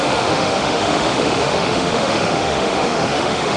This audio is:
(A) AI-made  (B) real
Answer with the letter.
A